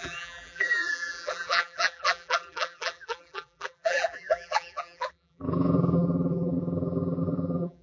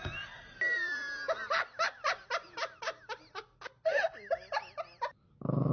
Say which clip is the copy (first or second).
first